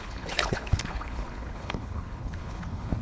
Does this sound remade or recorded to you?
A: remade